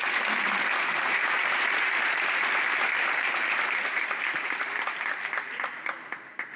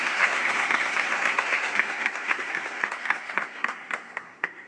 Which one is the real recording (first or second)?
first